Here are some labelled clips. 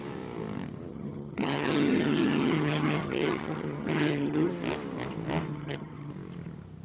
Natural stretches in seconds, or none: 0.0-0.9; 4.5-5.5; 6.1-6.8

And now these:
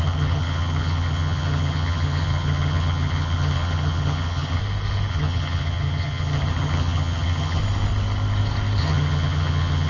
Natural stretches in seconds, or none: 4.6-5.1; 7.6-8.8